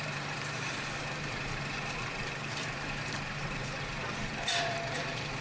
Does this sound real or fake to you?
fake